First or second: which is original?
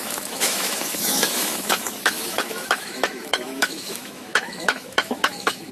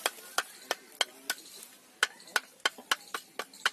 second